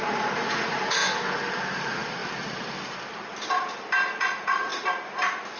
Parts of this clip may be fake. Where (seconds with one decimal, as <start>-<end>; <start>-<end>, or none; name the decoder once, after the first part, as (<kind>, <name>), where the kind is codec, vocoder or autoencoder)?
0.0-1.0 (vocoder, Vocos); 1.8-2.2; 4.2-4.7